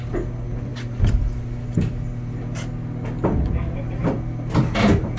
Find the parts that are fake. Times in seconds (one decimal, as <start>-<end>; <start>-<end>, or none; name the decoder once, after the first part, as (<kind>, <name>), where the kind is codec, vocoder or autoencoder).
none